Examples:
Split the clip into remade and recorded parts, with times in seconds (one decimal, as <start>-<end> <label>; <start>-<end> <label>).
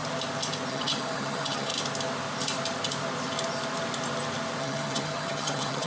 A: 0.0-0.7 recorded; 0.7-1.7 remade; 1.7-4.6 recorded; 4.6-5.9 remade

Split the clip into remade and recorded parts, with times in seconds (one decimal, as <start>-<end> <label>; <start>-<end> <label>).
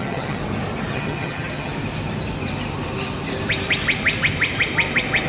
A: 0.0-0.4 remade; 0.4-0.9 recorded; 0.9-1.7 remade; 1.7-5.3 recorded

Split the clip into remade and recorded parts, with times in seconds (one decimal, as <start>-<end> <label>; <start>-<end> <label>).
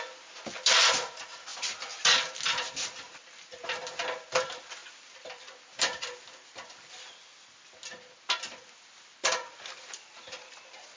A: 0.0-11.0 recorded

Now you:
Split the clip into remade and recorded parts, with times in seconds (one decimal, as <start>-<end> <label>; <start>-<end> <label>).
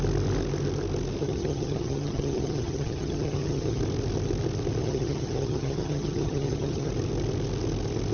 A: 0.0-1.2 recorded; 1.2-3.8 remade; 3.8-4.8 recorded; 4.8-6.9 remade; 6.9-8.1 recorded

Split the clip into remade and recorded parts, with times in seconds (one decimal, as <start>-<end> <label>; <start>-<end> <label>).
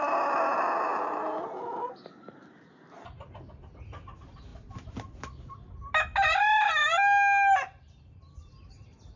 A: 0.0-9.2 recorded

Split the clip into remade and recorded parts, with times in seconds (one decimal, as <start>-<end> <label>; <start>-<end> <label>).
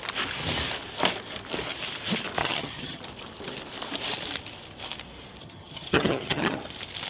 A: 0.0-2.4 recorded; 2.4-3.0 remade; 3.0-5.4 recorded; 5.4-6.6 remade; 6.6-7.1 recorded